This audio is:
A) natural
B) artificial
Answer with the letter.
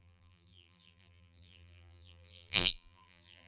B